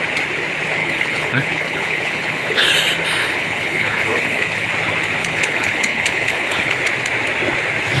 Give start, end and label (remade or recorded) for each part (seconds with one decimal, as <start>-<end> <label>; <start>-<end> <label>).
0.0-0.8 recorded; 0.8-2.7 remade; 2.7-3.2 recorded; 3.2-4.7 remade; 4.7-5.2 recorded; 5.2-6.8 remade; 6.8-8.0 recorded